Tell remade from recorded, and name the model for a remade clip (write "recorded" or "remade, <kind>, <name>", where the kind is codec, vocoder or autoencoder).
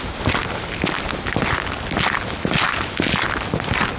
recorded